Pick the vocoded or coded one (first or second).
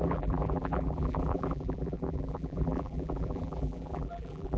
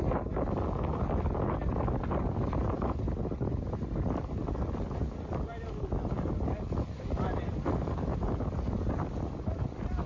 first